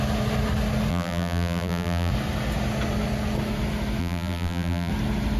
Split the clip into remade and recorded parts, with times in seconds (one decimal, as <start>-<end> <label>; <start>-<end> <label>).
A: 0.0-0.9 recorded; 0.9-2.1 remade; 2.1-4.0 recorded; 4.0-4.9 remade; 4.9-5.4 recorded